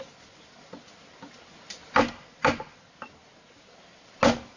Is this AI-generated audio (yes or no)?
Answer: no